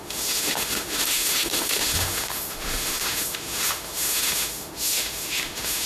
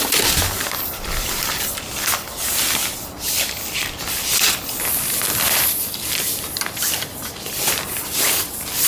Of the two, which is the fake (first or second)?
first